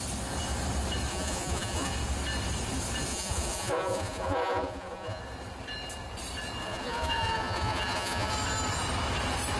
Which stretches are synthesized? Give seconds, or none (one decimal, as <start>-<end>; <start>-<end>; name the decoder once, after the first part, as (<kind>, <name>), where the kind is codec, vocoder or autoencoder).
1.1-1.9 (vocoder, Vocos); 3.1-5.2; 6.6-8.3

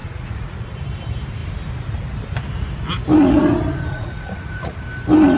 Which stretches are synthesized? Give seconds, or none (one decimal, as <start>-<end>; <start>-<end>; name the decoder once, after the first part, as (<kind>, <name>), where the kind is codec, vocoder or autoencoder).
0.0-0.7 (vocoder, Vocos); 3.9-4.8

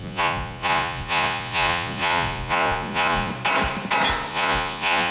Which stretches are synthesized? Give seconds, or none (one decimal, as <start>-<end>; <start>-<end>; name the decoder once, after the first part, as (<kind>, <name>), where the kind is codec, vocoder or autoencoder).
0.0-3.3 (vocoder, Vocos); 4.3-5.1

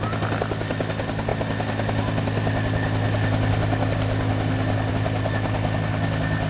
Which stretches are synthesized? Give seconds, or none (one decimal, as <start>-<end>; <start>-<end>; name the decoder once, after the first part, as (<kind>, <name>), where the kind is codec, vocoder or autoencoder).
none

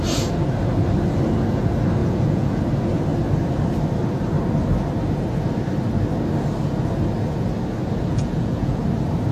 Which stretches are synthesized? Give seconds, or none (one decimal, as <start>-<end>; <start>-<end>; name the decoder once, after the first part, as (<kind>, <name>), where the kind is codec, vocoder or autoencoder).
2.0-2.6 (vocoder, Vocos); 8.1-8.8